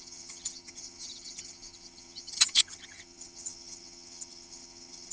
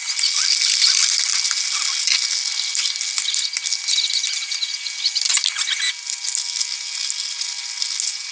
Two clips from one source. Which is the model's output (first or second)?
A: first